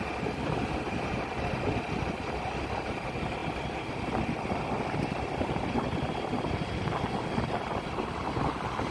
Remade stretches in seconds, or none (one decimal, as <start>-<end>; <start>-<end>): none